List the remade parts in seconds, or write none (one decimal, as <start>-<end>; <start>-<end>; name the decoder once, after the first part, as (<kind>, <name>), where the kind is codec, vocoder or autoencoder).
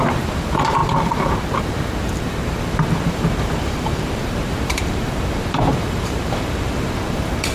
0.0-7.5 (vocoder, BigVGAN v2)